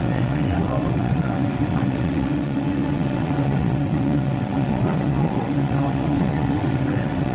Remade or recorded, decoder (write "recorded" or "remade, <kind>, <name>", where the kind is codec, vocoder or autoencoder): remade, vocoder, WaveNeXt